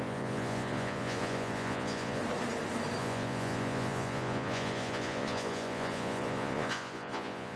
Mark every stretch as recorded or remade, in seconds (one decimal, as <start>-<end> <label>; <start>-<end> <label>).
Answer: 0.0-2.2 remade; 2.2-3.0 recorded; 3.0-7.6 remade